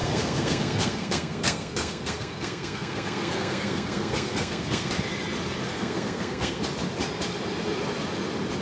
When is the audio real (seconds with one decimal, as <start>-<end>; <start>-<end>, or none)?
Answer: 4.9-5.7; 6.6-8.6